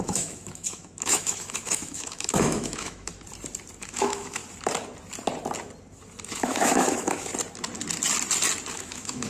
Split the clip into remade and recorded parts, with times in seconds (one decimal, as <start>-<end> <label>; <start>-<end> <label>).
0.0-3.1 remade; 3.1-3.8 recorded; 3.8-4.4 remade; 4.4-6.3 recorded; 6.3-7.3 remade; 7.3-8.7 recorded; 8.7-9.3 remade